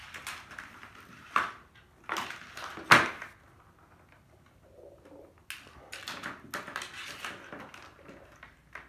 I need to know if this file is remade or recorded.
recorded